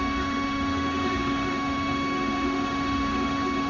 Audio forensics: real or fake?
fake